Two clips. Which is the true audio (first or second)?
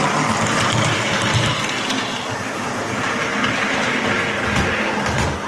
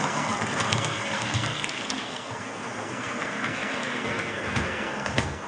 first